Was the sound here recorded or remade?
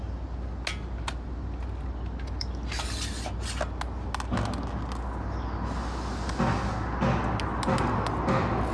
recorded